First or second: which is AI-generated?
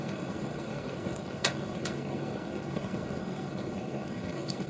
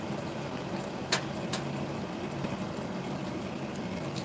first